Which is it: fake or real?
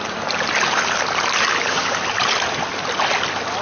real